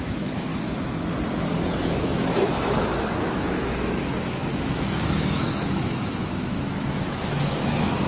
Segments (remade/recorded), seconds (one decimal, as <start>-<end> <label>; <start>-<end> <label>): 0.0-0.5 remade; 0.5-1.8 recorded; 1.8-8.1 remade